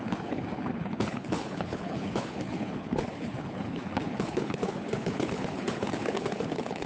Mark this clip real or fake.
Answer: fake